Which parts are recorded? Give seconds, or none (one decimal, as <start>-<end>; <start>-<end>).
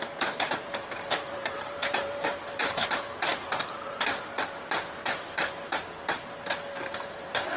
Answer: none